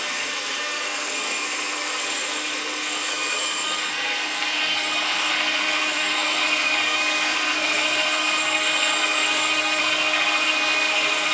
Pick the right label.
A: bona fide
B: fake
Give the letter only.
B